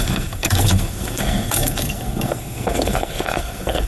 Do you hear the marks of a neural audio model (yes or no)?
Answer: yes